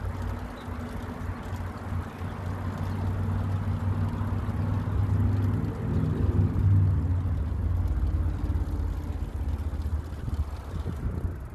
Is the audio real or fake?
real